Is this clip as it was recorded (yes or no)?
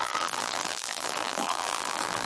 no